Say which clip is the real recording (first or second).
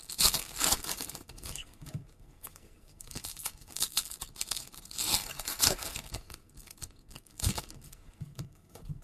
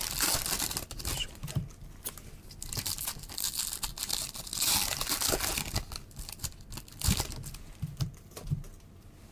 second